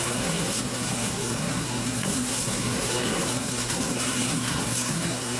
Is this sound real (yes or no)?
no